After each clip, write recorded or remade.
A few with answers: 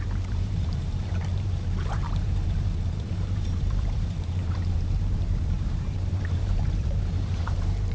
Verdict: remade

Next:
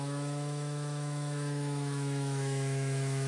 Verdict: remade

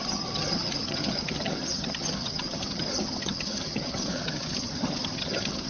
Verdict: remade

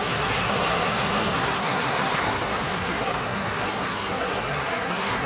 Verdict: remade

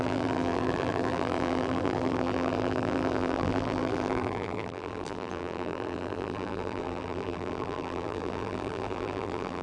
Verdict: remade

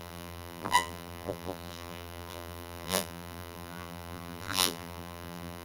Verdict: remade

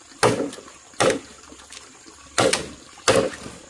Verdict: recorded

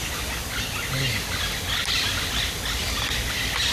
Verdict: recorded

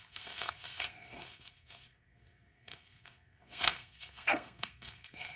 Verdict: remade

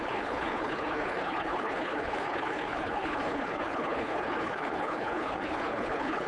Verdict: remade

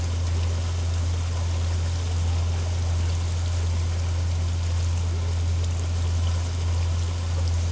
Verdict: recorded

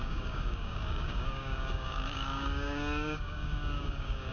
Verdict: remade